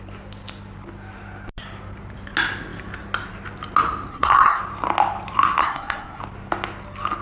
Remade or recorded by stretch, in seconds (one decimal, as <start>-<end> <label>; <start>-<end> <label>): 0.0-4.1 recorded; 4.1-4.6 remade; 4.6-5.6 recorded; 5.6-6.2 remade; 6.2-7.2 recorded

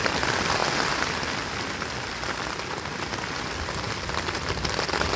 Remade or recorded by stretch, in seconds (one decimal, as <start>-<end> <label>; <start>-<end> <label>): 0.0-5.2 recorded

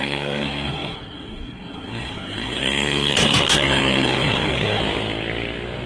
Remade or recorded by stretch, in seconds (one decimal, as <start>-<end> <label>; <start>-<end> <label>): 0.0-4.8 remade; 4.8-5.9 recorded